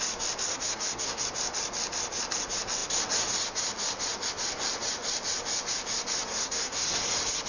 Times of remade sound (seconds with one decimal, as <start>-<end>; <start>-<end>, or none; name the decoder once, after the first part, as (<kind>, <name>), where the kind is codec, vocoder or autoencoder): 0.5-1.2 (codec, SNAC); 6.3-7.0